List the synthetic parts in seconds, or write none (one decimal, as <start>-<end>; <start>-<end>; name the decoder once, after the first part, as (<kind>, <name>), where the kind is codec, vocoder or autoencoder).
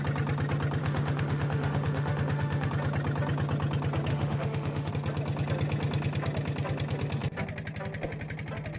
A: 0.8-2.7 (autoencoder, DAC-VAE); 4.1-4.9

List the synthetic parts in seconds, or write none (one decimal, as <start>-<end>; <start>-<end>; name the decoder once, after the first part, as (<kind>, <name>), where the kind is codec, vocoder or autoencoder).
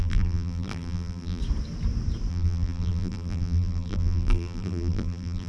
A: 0.0-1.4 (vocoder, BigVGAN v2); 2.3-5.5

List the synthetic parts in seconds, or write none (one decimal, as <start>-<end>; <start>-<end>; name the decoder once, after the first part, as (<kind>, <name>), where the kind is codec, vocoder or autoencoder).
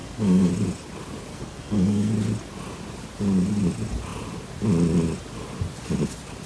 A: 0.0-0.5 (codec, SNAC); 1.3-2.1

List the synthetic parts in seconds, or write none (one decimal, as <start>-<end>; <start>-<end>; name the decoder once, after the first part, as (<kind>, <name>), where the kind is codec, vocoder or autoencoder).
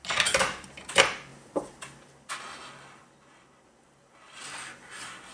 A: none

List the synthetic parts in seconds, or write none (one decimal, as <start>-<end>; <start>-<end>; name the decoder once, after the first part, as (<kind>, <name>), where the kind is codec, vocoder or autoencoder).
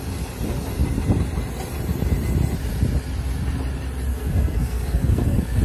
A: 4.1-5.6 (codec, SNAC)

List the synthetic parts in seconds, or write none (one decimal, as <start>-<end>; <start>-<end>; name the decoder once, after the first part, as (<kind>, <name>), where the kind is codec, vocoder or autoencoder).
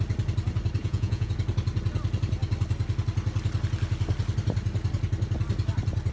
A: 0.8-1.3 (vocoder, Vocos)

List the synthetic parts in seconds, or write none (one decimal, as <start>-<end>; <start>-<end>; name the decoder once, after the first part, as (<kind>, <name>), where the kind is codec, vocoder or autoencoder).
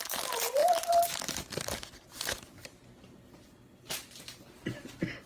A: 0.6-3.8 (vocoder, BigVGAN v2)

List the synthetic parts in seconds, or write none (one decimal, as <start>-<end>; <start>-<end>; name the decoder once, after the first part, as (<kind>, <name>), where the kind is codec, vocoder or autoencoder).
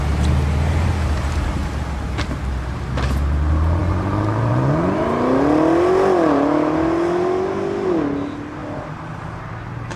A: none